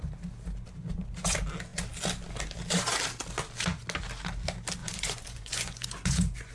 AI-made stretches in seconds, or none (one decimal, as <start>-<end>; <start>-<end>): 4.8-6.5